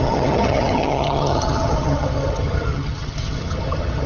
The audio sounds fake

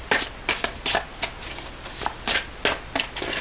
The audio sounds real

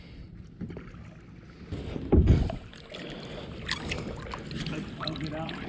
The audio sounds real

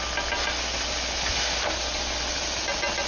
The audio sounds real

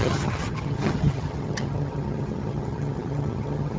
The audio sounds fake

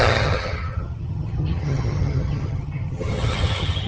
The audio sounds fake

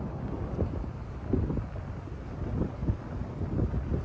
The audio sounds real